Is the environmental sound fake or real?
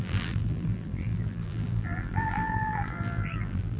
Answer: fake